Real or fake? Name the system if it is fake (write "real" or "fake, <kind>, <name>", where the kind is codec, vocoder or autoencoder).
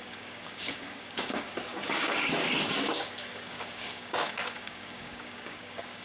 fake, codec, DAC